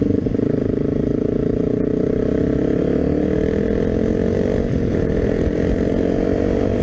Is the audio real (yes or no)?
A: yes